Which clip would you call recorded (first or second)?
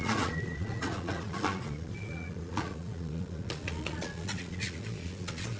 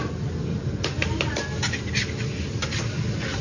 second